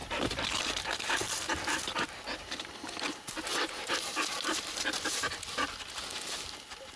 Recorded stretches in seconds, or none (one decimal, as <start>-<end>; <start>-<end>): 0.0-7.0